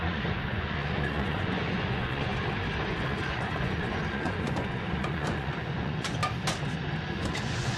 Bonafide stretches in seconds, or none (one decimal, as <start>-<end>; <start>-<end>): 2.3-2.9; 6.2-7.1